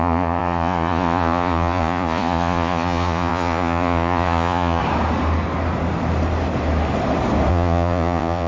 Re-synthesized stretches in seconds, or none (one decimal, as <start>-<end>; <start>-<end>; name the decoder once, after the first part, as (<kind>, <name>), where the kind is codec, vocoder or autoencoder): 0.0-4.8 (vocoder, Vocos); 7.5-8.5